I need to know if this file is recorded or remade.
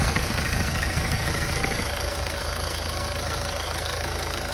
remade